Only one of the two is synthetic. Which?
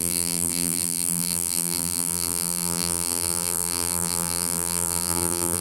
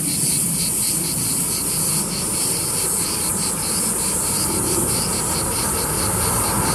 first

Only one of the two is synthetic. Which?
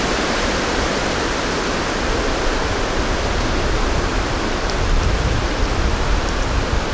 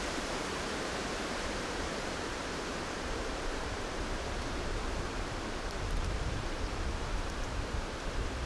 second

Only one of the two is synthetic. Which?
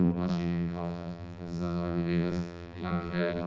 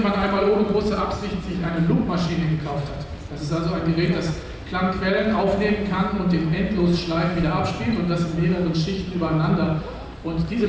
first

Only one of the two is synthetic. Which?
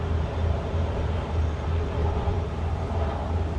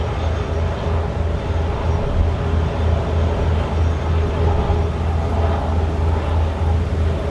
first